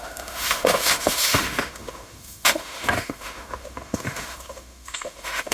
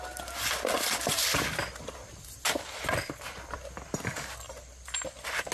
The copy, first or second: first